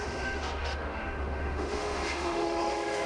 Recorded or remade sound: remade